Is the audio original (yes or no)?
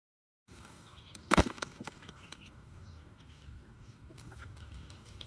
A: no